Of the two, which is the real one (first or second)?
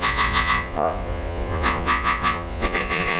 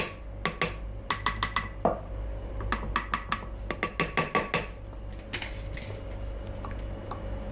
second